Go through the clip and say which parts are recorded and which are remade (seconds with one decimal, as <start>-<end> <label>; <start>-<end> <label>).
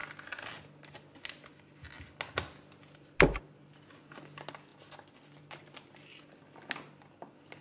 0.0-7.6 recorded